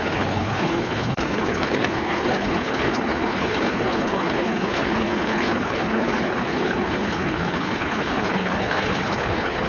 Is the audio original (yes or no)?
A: no